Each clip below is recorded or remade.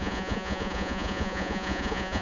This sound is remade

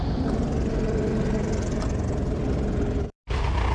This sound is recorded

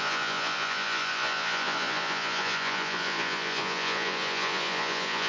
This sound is remade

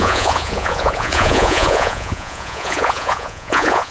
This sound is remade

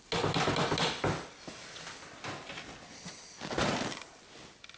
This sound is recorded